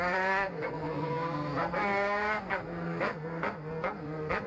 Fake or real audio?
fake